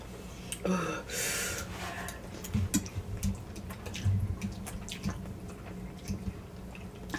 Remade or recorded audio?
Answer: recorded